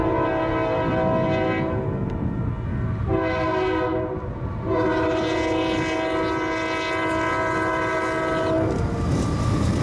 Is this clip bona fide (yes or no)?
yes